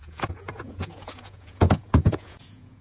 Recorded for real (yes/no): no